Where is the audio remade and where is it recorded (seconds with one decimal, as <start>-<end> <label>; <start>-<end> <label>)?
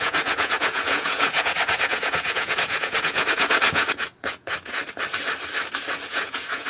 0.0-4.8 remade; 4.8-6.1 recorded; 6.1-6.7 remade